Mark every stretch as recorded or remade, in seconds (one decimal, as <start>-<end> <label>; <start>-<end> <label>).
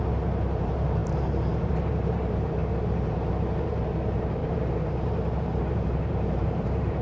0.0-7.0 remade